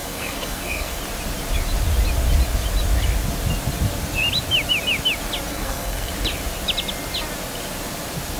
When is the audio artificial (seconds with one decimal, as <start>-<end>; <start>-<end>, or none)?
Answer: 0.0-1.0; 5.5-6.1